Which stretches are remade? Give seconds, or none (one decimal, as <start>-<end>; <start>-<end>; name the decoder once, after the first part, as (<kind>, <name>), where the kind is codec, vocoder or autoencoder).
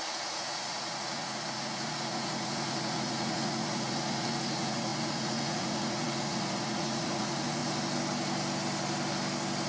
0.0-7.6 (vocoder, Vocos)